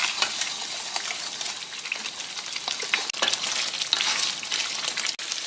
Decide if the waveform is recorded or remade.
recorded